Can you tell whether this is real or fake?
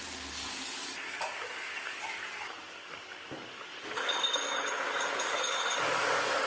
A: fake